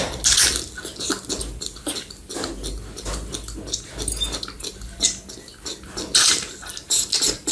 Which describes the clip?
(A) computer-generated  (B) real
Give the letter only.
B